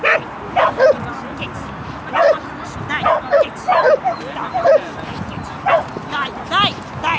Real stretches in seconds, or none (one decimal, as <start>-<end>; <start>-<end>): 0.0-7.2